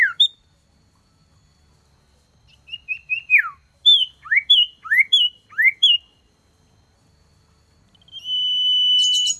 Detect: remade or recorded recorded